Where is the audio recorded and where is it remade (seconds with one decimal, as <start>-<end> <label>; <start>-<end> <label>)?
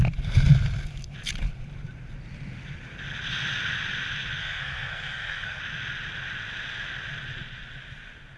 0.0-4.4 recorded; 4.4-5.6 remade; 5.6-8.4 recorded